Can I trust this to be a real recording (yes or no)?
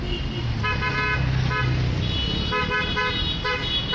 yes